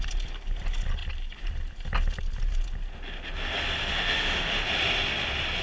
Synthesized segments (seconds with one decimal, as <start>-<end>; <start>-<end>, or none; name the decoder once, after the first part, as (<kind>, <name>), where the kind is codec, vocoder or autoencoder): 3.9-4.7 (autoencoder, DAC-VAE)